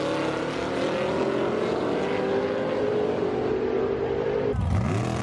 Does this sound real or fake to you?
real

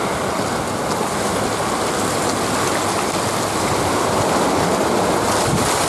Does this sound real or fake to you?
real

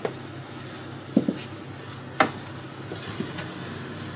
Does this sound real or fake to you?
real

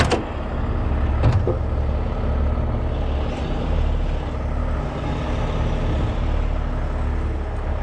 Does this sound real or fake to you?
real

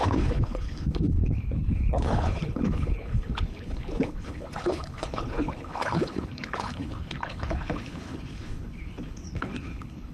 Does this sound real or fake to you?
fake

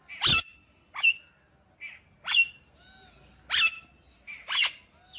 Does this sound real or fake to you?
real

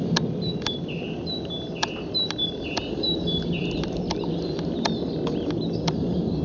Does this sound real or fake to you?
real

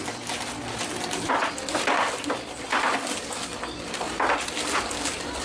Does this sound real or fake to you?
real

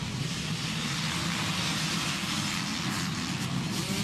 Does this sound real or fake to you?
real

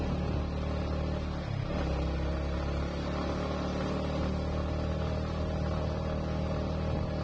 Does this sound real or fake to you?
real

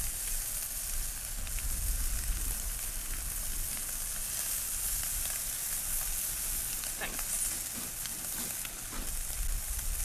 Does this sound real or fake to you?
real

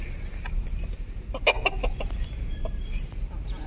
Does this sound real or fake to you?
real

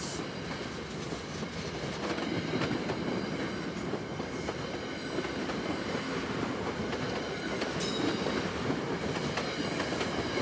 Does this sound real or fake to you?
real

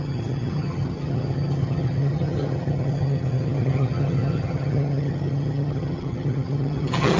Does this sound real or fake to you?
fake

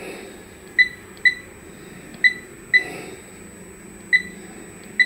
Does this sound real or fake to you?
real